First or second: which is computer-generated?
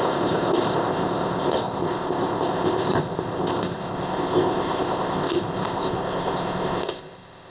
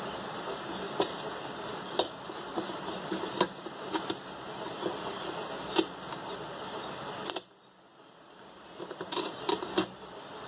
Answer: first